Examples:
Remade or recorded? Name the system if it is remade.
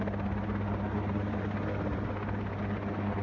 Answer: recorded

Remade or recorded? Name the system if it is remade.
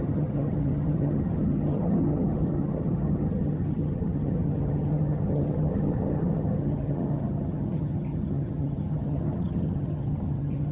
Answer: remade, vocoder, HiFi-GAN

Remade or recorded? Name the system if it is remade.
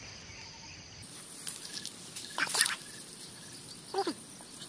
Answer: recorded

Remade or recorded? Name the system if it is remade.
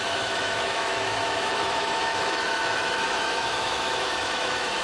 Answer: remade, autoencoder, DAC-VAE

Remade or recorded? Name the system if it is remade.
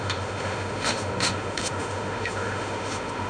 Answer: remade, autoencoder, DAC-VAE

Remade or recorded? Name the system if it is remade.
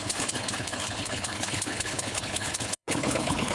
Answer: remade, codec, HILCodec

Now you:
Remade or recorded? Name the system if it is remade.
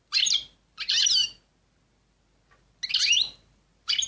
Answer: recorded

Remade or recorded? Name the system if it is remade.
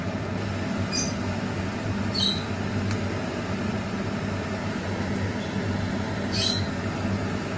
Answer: recorded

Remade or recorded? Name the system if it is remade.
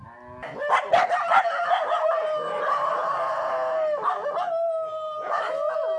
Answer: recorded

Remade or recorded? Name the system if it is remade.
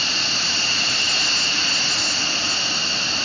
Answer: recorded